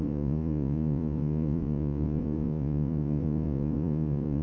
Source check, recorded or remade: remade